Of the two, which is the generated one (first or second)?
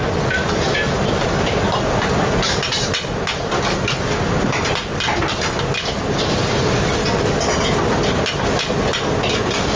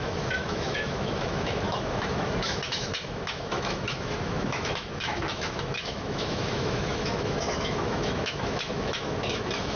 second